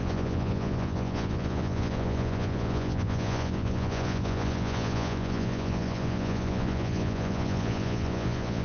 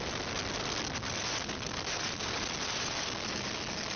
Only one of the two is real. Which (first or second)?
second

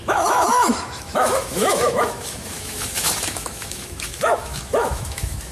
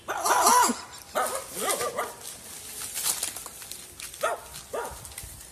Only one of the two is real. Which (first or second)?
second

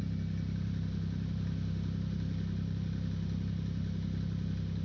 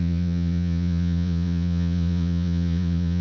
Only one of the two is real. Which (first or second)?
first